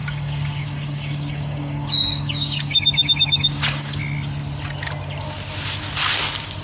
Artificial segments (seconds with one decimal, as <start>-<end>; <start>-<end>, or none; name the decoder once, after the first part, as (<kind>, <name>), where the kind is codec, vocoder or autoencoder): 0.0-4.0 (codec, DAC)